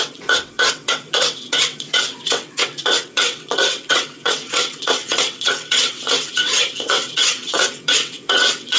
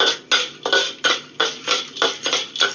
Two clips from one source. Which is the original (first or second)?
second